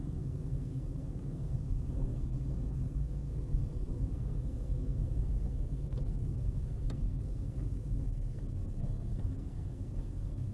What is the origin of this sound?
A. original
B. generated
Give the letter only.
B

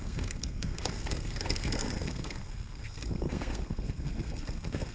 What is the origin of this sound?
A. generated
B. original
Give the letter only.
A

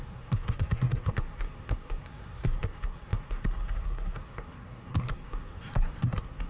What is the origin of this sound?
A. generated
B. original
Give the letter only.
A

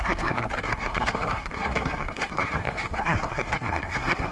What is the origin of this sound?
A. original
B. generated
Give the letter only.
B